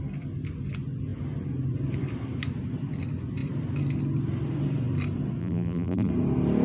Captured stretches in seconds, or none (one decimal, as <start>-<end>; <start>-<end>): 0.0-5.4; 6.1-6.6